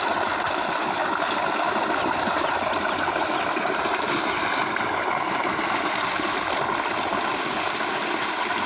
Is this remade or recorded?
recorded